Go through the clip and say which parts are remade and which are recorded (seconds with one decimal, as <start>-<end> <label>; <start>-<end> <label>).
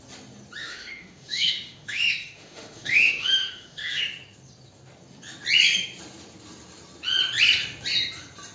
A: 0.0-0.6 recorded; 0.6-4.0 remade; 4.0-8.5 recorded